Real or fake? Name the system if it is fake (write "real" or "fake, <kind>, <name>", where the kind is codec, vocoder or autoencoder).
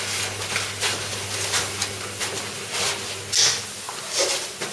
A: real